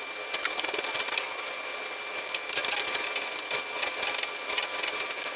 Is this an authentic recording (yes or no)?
yes